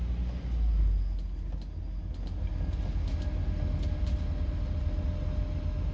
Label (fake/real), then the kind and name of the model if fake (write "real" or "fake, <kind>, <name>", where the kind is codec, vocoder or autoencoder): real